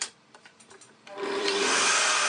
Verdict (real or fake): fake